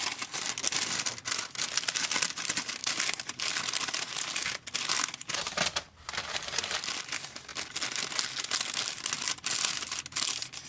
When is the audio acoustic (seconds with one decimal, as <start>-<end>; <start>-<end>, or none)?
0.0-10.7